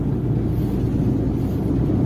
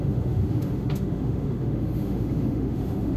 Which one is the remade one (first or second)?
second